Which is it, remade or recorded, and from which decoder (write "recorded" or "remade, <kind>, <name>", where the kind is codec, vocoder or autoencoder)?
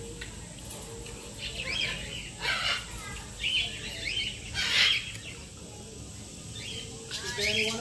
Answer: recorded